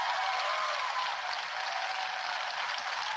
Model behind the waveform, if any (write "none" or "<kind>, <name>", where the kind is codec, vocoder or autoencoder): none